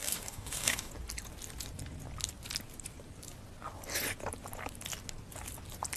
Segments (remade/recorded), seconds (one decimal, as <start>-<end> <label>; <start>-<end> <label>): 0.0-0.9 remade; 0.9-6.0 recorded